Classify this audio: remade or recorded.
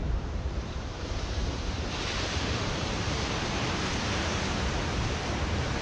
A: remade